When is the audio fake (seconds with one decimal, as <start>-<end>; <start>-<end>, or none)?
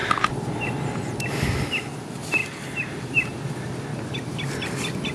3.9-4.6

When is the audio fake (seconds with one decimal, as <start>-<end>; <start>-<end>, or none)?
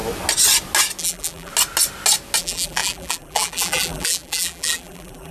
1.0-1.5; 2.4-5.3